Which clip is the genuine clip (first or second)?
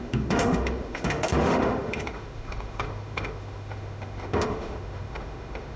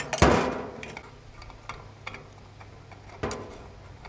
second